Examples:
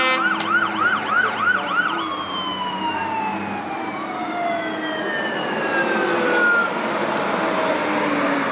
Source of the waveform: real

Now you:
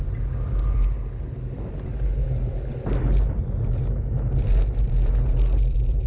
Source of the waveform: real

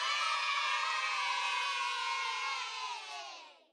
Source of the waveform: fake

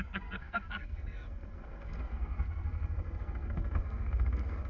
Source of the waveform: fake